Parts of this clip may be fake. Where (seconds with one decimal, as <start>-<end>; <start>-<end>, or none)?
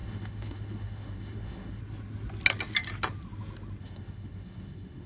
0.0-1.8; 3.8-5.1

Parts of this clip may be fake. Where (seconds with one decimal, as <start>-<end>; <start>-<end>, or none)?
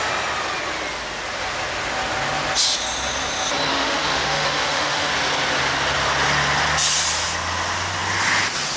3.7-5.1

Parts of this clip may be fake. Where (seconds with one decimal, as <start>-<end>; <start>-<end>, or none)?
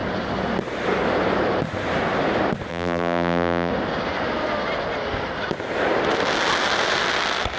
2.7-3.7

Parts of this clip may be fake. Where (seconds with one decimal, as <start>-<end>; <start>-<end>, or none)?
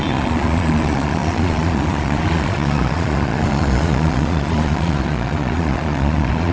0.0-6.5